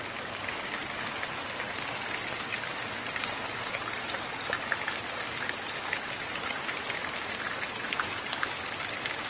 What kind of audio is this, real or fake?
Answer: real